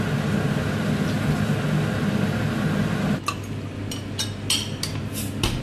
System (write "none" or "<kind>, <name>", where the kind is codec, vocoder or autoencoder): none